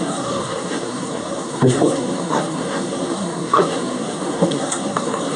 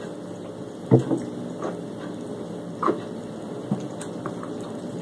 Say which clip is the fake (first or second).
first